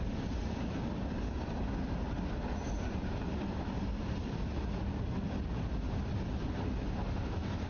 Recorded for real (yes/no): yes